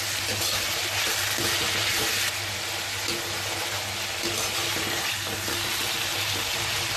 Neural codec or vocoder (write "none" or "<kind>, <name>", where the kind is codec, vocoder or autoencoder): none